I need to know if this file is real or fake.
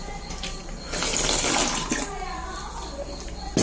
real